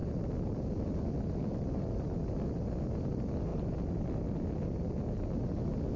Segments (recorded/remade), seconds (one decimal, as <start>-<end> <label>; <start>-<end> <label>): 0.0-6.0 recorded